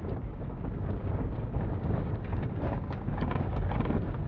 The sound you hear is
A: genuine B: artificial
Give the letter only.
B